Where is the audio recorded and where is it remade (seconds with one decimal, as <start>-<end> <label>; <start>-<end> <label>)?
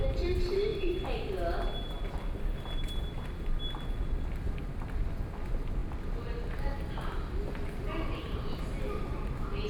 0.0-9.7 recorded